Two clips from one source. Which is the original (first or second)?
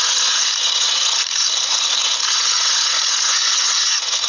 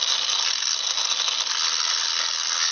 second